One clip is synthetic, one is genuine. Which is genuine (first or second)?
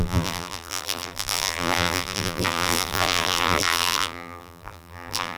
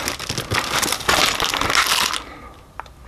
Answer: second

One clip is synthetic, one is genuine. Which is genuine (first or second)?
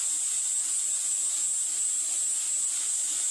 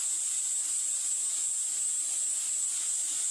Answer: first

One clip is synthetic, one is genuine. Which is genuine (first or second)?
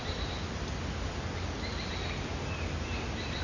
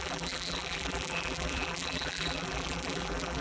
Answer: first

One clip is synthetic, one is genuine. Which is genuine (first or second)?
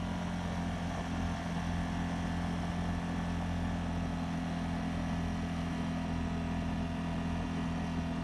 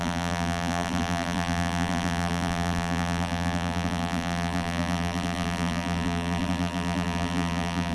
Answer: first